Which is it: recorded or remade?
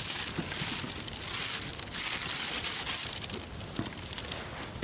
recorded